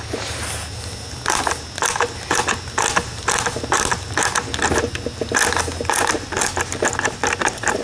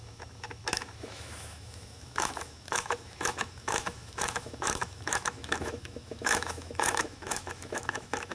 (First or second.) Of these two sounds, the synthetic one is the second